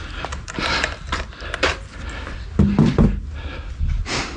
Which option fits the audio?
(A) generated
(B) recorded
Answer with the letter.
B